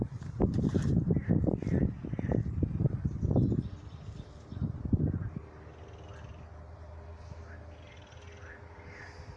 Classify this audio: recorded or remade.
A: recorded